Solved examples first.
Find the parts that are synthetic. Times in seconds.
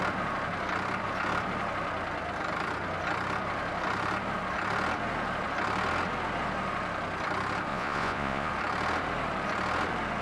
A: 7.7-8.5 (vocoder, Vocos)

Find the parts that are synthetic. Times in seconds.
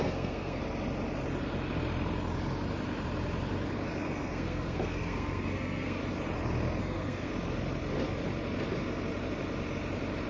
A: 0.0-0.6 (codec, SNAC); 4.0-6.0; 6.8-7.3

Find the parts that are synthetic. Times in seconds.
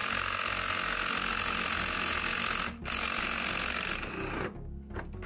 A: none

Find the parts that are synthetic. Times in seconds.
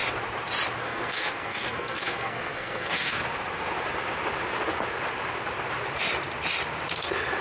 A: 0.8-3.2 (codec, SNAC)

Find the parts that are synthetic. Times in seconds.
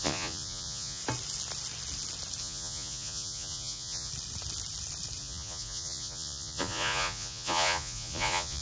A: 0.0-1.0 (vocoder, Vocos); 2.4-4.1; 5.2-8.6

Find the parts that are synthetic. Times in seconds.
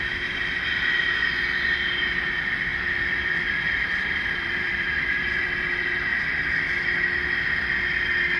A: 2.7-5.9 (vocoder, BigVGAN v2)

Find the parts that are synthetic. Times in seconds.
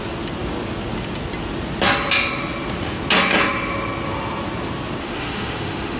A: 5.0-6.0 (autoencoder, DAC-VAE)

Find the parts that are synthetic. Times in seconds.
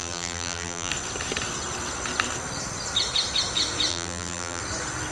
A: 0.0-0.9 (vocoder, BigVGAN v2); 3.9-4.6